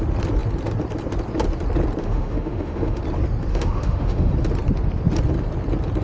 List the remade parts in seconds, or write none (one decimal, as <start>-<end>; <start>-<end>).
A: 2.0-3.0; 3.5-4.3